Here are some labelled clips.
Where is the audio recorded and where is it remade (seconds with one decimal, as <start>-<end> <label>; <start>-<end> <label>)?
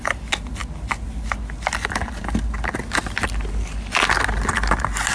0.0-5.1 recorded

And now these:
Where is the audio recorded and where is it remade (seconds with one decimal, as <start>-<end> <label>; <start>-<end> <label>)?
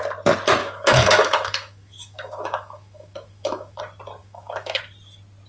0.0-0.6 recorded; 0.6-3.8 remade; 3.8-4.2 recorded; 4.2-4.8 remade; 4.8-5.5 recorded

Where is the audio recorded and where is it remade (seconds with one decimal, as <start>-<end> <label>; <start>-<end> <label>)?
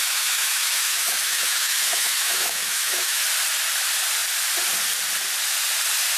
0.0-3.2 remade; 3.2-6.2 recorded